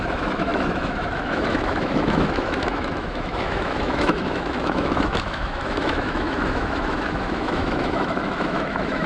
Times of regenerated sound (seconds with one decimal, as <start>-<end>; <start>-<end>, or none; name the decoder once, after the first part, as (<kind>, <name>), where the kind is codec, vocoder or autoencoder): 0.0-9.1 (autoencoder, DAC-VAE)